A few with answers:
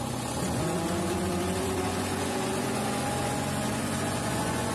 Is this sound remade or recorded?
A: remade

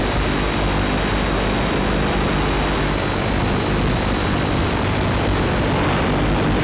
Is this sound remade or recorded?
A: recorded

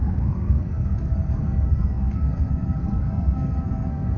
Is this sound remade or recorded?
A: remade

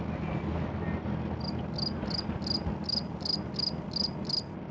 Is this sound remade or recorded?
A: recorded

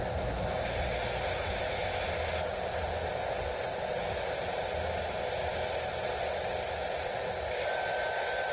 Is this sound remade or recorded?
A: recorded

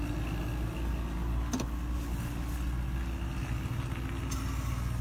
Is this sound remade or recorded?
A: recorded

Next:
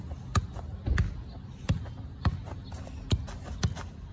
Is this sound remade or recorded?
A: recorded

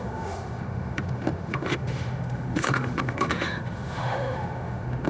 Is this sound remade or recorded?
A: remade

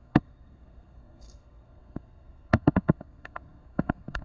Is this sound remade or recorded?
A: remade